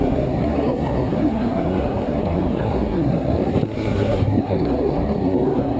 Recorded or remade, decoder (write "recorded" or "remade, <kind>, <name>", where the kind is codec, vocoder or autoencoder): remade, codec, SNAC